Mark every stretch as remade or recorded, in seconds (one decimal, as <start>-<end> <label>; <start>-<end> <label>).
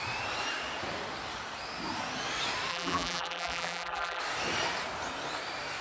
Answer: 0.0-2.7 recorded; 2.7-4.2 remade; 4.2-5.8 recorded